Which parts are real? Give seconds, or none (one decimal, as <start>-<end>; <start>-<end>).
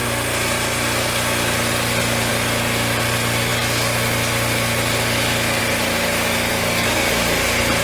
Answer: 0.0-6.5; 7.1-7.8